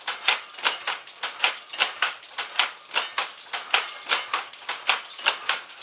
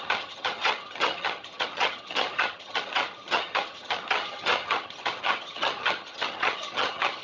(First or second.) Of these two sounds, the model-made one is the second